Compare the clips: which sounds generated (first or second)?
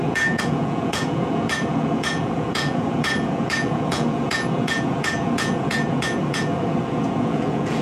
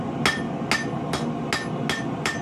first